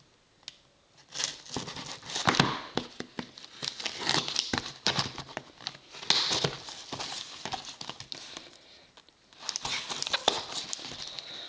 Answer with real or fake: real